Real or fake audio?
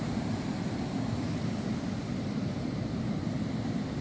real